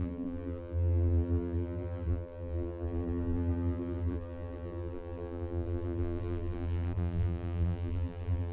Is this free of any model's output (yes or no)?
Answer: no